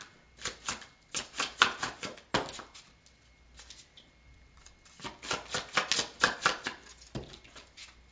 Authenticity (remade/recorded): recorded